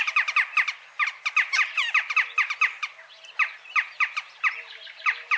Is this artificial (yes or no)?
no